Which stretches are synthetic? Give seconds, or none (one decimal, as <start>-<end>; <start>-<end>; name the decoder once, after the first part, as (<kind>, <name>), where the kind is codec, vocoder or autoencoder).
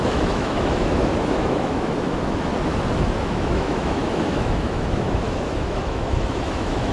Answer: 0.0-2.5 (autoencoder, DAC-VAE); 3.0-6.9